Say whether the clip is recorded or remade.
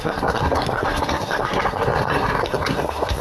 remade